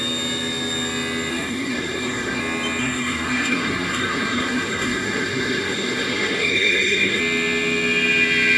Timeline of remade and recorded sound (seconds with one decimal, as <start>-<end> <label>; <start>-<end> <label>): 0.0-1.3 recorded; 1.3-2.4 remade; 2.4-2.8 recorded; 2.8-7.2 remade; 7.2-8.6 recorded